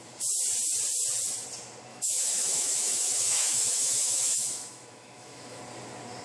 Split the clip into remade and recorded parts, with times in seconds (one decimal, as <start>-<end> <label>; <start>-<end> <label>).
0.0-1.9 recorded; 1.9-5.6 remade; 5.6-6.2 recorded